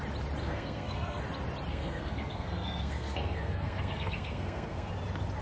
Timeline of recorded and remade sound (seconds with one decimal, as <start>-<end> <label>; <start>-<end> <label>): 0.0-0.4 recorded; 0.4-1.2 remade; 1.2-1.7 recorded; 1.7-4.9 remade; 4.9-5.4 recorded